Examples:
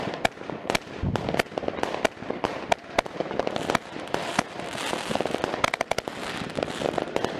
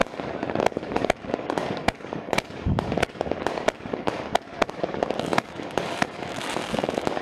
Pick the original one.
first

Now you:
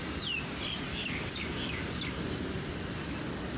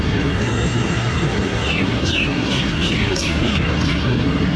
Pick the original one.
first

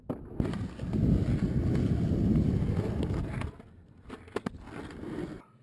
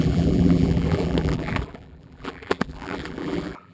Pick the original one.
first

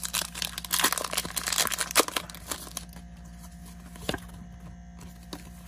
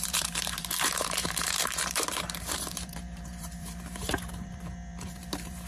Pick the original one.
first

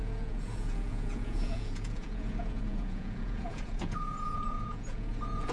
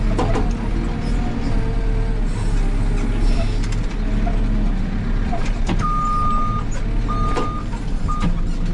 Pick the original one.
second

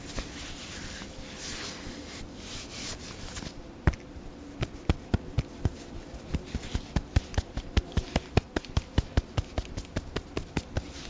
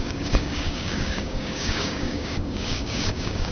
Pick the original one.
first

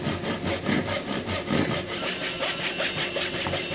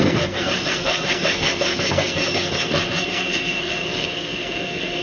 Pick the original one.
first